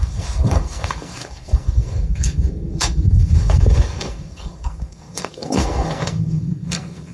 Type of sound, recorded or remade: remade